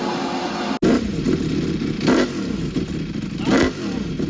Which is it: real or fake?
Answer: real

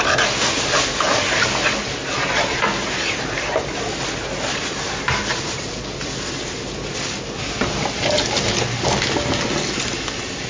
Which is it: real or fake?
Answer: real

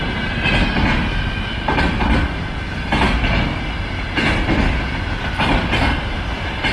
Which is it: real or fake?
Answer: real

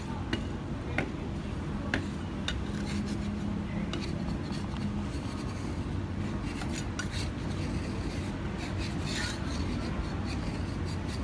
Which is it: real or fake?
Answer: real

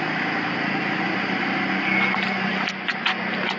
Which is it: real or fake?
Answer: real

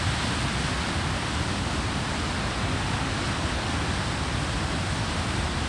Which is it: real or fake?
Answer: real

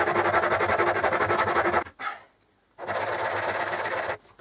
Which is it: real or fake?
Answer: real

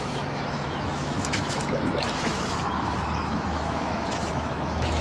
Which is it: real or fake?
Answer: fake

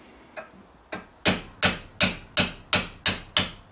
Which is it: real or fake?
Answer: real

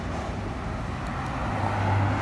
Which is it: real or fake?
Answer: real